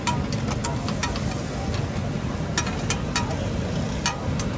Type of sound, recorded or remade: recorded